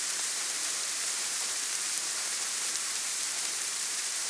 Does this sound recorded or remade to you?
remade